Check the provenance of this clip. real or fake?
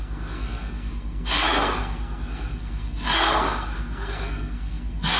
fake